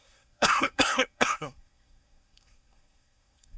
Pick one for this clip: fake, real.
fake